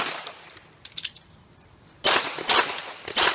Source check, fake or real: real